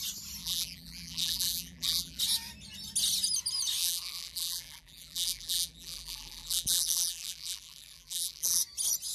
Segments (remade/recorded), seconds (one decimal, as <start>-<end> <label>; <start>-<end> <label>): 0.0-0.4 recorded; 0.4-2.2 remade; 2.2-3.8 recorded; 3.8-8.6 remade; 8.6-9.1 recorded